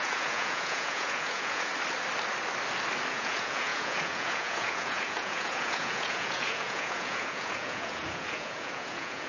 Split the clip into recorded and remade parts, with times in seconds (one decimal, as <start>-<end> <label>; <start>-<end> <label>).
0.0-1.7 remade; 1.7-3.1 recorded; 3.1-9.3 remade